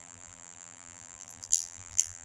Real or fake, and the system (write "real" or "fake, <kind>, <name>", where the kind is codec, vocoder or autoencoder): fake, vocoder, BigVGAN v2